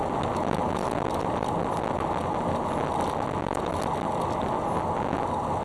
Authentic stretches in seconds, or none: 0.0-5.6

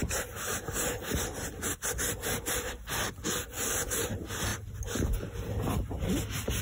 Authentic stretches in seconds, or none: 0.0-6.6